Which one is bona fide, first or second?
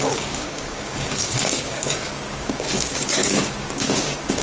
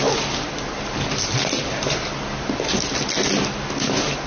second